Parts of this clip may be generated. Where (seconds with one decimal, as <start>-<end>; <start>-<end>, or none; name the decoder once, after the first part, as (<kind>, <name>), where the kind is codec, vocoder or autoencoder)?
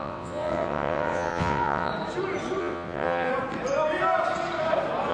0.0-1.9 (vocoder, WaveNeXt); 2.6-3.3